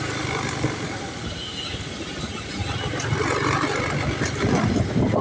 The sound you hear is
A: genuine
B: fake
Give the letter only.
A